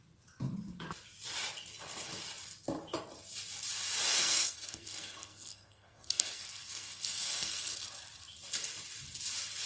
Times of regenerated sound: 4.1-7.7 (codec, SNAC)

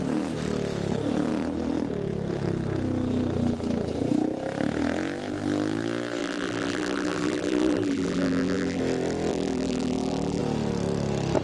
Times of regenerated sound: 6.2-8.8 (vocoder, BigVGAN v2); 9.3-10.4

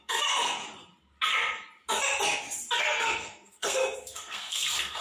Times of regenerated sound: 0.0-0.6 (codec, SNAC); 2.8-5.0